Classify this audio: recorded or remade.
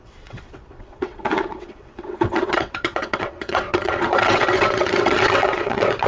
remade